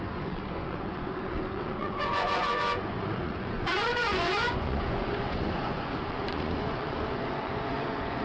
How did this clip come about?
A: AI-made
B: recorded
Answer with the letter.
A